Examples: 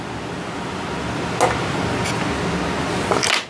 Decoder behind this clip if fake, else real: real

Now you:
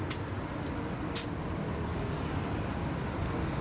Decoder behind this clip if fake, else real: real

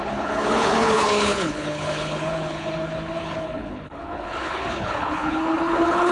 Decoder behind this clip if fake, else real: fake, codec, HILCodec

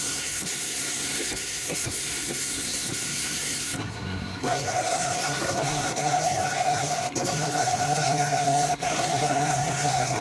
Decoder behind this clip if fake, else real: fake, codec, SNAC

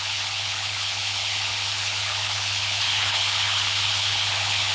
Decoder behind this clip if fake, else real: fake, codec, HILCodec